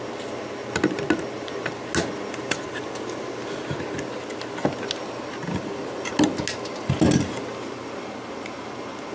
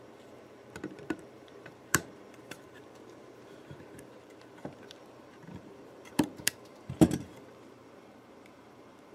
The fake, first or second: second